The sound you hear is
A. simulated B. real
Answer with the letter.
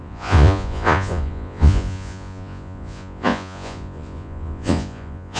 A